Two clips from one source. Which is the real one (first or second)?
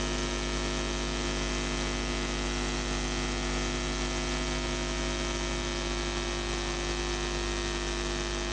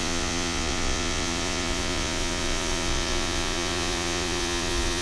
first